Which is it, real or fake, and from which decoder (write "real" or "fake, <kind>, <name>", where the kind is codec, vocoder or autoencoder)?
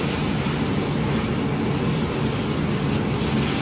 real